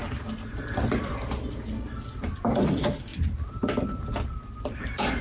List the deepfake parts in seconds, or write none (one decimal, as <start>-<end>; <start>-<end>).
0.0-1.1